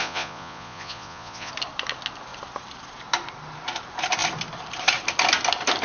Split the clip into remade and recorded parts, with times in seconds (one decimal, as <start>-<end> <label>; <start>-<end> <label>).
0.0-1.5 remade; 1.5-5.8 recorded